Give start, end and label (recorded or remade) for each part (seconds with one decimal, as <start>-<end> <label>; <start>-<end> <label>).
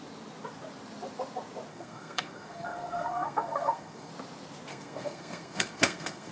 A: 0.0-1.7 recorded; 1.7-4.1 remade; 4.1-4.7 recorded; 4.7-6.3 remade